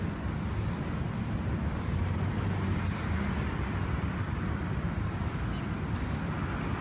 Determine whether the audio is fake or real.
real